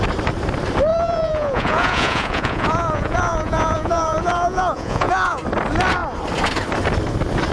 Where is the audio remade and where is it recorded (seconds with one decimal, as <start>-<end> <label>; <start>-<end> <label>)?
0.0-0.9 recorded; 0.9-5.4 remade; 5.4-7.5 recorded